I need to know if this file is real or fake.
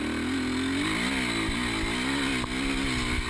real